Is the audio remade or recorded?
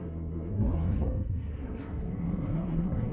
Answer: remade